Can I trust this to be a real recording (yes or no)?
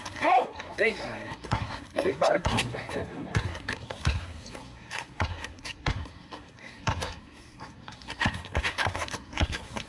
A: no